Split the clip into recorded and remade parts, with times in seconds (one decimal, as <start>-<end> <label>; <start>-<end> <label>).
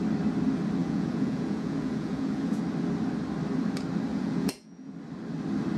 0.0-0.8 recorded; 0.8-2.6 remade; 2.6-4.1 recorded; 4.1-4.9 remade; 4.9-5.8 recorded